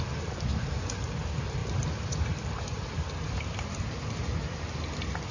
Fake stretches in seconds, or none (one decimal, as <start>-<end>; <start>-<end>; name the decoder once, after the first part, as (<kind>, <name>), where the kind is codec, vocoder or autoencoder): none